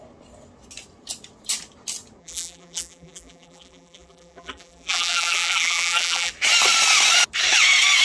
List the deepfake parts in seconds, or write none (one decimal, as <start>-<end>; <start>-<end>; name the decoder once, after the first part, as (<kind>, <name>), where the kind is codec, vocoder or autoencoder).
2.2-6.3 (vocoder, BigVGAN v2)